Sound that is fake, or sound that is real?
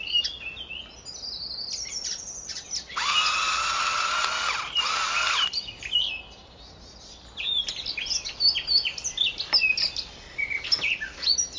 real